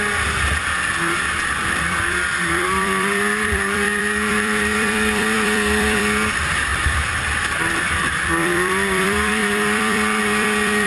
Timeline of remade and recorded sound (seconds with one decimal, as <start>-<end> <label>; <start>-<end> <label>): 0.0-10.9 remade